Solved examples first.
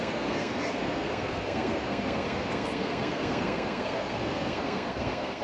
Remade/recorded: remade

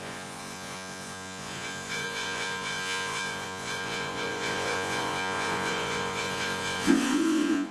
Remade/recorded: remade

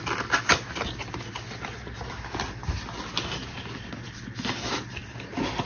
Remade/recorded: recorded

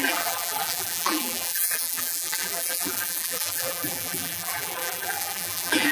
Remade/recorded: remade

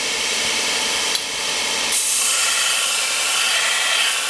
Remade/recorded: recorded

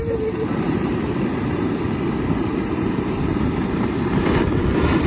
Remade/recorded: remade